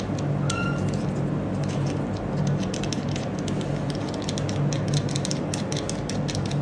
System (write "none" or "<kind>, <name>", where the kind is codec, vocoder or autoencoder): none